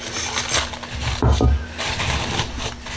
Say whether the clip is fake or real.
real